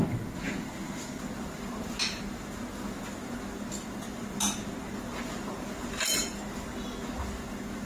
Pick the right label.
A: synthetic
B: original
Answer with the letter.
B